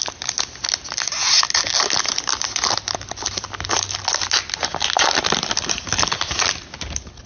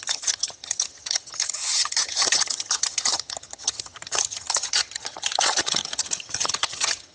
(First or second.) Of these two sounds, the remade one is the second